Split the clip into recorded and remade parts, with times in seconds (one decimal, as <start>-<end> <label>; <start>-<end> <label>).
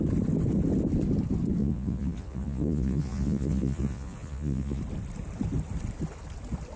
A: 0.0-1.6 recorded; 1.6-4.8 remade; 4.8-6.8 recorded